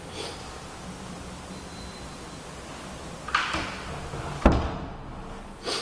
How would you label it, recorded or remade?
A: recorded